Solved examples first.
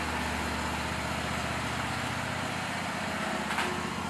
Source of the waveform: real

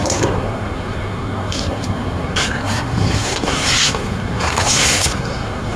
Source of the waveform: fake